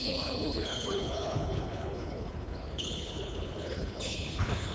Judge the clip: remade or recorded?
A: remade